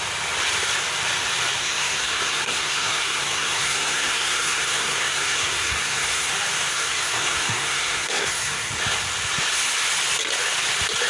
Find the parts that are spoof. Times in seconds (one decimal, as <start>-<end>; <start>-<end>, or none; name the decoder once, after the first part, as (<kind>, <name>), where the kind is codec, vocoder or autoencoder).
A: 1.6-6.3 (codec, SNAC); 6.7-8.7